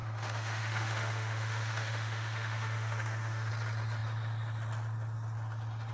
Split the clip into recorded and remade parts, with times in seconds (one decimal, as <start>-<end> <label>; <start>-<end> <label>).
0.0-3.5 remade; 3.5-5.9 recorded